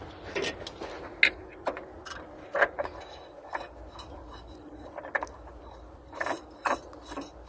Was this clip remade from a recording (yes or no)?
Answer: no